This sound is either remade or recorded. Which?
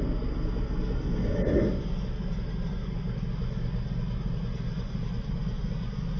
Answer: recorded